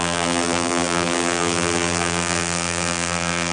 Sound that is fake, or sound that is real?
fake